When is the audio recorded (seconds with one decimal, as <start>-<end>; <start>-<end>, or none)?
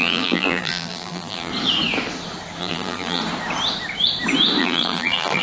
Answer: 1.5-2.6; 3.2-4.6